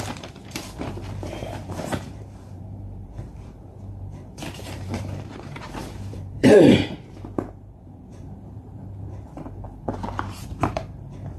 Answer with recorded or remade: remade